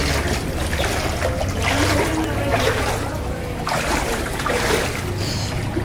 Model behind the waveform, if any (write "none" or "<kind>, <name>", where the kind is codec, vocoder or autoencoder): none